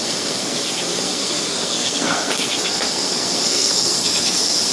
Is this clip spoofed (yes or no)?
yes